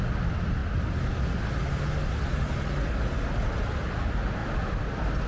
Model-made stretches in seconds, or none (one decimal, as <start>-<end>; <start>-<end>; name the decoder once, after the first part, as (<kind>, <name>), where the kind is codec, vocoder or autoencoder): 4.4-5.3 (vocoder, BigVGAN v2)